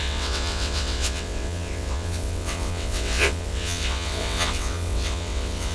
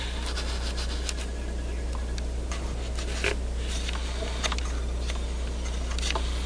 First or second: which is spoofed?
first